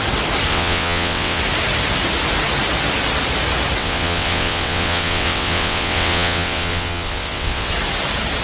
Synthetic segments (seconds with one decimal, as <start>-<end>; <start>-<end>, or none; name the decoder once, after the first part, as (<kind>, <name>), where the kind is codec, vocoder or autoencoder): 0.5-1.4 (vocoder, WaveNeXt); 3.8-7.7